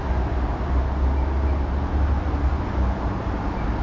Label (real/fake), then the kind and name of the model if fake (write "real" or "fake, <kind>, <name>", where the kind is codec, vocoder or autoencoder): real